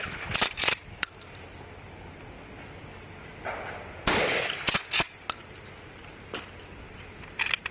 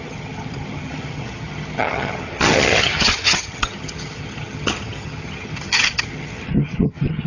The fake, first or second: second